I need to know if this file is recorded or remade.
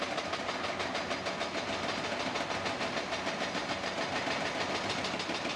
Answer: recorded